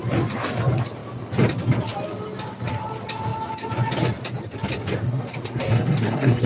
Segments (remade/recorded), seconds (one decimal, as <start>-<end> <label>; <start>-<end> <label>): 0.0-5.0 recorded; 5.0-6.5 remade